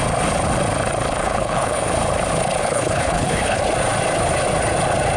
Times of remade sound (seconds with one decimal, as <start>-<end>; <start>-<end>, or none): 1.2-1.8; 2.6-3.6